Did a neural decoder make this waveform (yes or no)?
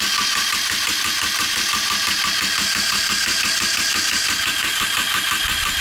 no